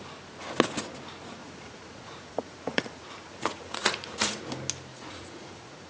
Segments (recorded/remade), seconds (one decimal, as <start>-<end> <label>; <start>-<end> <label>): 0.0-1.4 recorded; 1.4-4.4 remade; 4.4-4.9 recorded; 4.9-5.9 remade